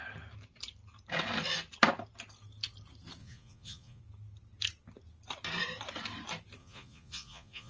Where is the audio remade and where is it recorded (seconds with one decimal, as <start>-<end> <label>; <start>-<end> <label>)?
0.0-3.2 recorded; 3.2-4.0 remade; 4.0-6.6 recorded; 6.6-7.7 remade